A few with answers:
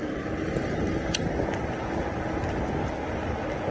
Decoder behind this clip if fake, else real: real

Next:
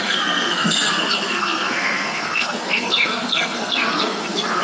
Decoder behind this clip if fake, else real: fake, codec, SNAC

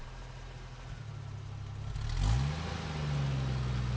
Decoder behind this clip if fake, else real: real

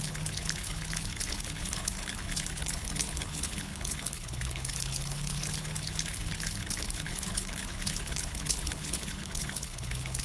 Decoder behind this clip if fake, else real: fake, codec, HILCodec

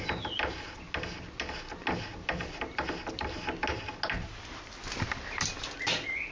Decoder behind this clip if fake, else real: real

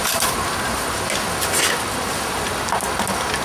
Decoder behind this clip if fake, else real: real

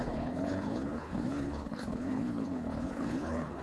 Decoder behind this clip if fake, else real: fake, codec, HILCodec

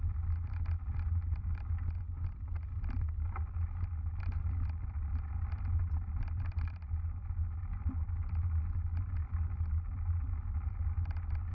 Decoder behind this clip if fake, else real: real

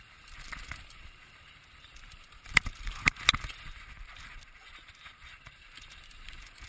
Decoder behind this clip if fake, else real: real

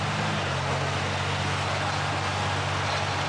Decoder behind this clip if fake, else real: real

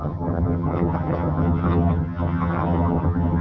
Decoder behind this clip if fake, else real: fake, vocoder, HiFi-GAN